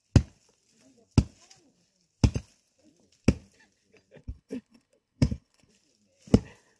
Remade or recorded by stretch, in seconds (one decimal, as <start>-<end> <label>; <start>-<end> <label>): 0.0-4.2 recorded; 4.2-5.7 remade; 5.7-6.8 recorded